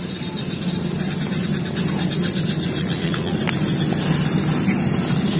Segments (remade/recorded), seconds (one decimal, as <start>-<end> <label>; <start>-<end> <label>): 0.0-2.8 recorded; 2.8-3.4 remade; 3.4-5.4 recorded